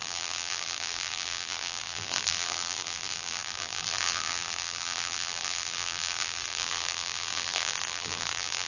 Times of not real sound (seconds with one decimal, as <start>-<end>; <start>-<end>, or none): 0.0-8.7